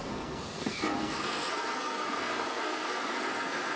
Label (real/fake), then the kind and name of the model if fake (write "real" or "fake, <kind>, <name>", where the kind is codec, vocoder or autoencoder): fake, codec, SNAC